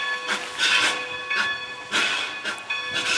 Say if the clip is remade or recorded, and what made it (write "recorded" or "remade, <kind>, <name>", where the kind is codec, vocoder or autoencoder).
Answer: recorded